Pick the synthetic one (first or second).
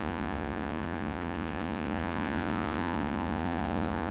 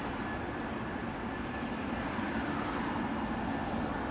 first